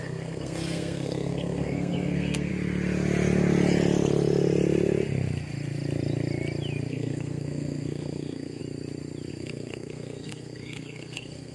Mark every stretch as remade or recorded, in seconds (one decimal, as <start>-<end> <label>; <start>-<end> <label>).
0.0-2.5 remade; 2.5-6.9 recorded; 6.9-8.6 remade; 8.6-9.3 recorded; 9.3-11.5 remade

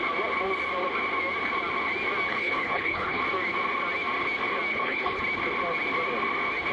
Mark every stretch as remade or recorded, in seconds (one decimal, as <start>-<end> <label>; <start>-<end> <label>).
0.0-2.3 recorded; 2.3-3.2 remade; 3.2-4.7 recorded; 4.7-5.2 remade; 5.2-6.7 recorded

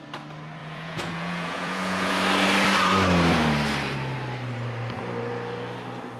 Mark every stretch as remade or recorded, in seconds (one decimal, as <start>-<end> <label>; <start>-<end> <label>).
0.0-0.6 recorded; 0.6-2.1 remade; 2.1-6.2 recorded

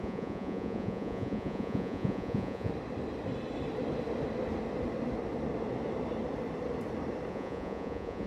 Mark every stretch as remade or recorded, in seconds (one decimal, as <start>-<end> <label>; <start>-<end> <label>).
0.0-2.7 remade; 2.7-7.3 recorded; 7.3-8.3 remade

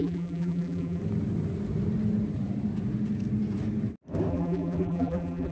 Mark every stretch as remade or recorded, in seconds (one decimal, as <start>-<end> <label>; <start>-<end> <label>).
0.0-1.0 remade; 1.0-4.3 recorded; 4.3-5.5 remade

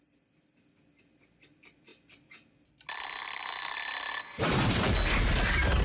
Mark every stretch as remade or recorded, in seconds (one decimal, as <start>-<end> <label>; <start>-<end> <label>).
0.0-5.8 recorded